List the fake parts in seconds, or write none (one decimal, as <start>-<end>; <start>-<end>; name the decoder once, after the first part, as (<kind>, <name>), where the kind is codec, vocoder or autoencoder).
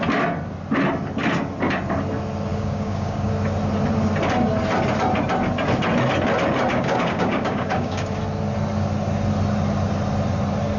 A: 2.5-3.3 (codec, DAC); 6.7-8.2